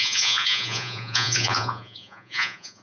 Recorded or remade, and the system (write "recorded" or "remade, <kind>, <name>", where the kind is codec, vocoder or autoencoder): remade, vocoder, Vocos